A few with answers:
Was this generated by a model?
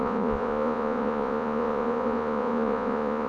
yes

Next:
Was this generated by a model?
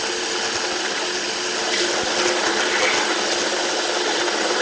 no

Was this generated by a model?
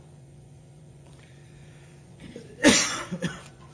yes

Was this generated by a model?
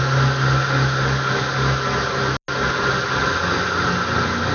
no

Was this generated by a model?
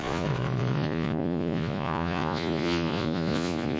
yes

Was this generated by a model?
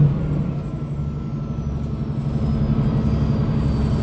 no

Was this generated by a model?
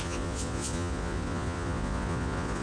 yes